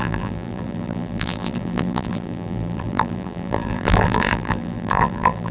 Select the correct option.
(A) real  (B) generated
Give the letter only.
B